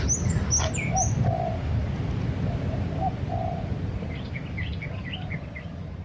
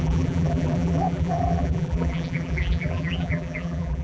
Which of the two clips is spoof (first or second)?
second